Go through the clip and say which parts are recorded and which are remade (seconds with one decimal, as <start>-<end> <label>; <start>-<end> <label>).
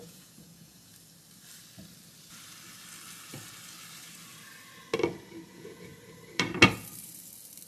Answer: 0.0-0.9 remade; 0.9-5.5 recorded; 5.5-5.9 remade; 5.9-7.7 recorded